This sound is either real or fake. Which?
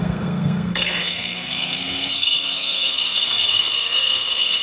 fake